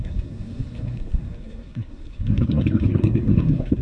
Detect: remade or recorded remade